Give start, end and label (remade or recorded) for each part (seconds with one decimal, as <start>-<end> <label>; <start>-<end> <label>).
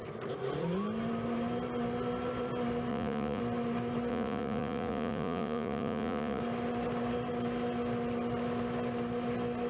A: 0.0-2.9 recorded; 2.9-3.4 remade; 3.4-4.1 recorded; 4.1-6.4 remade; 6.4-9.7 recorded